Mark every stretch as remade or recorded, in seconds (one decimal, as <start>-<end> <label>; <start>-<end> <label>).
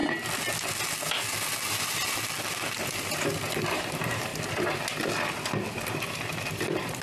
0.0-3.8 recorded; 3.8-4.3 remade; 4.3-6.1 recorded; 6.1-7.0 remade